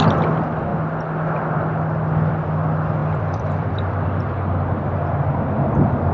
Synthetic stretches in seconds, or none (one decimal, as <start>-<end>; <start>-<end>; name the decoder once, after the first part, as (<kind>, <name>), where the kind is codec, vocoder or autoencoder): 3.0-4.4 (vocoder, BigVGAN v2)